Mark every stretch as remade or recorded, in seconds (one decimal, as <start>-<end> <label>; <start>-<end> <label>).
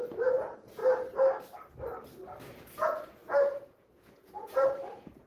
0.0-0.8 remade; 0.8-2.5 recorded; 2.5-5.3 remade